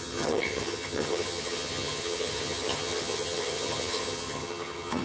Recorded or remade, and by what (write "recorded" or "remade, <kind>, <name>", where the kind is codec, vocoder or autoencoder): remade, vocoder, HiFi-GAN